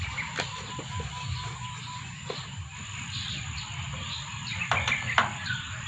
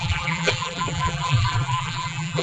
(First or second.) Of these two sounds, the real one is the first